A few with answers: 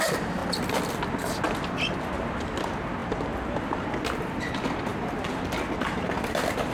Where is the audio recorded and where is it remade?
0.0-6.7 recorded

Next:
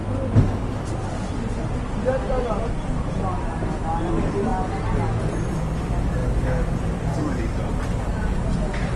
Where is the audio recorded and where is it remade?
0.0-1.7 recorded; 1.7-4.5 remade; 4.5-5.5 recorded; 5.5-6.2 remade; 6.2-6.8 recorded; 6.8-9.0 remade

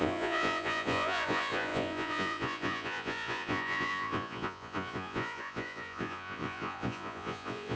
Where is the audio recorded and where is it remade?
0.0-7.8 remade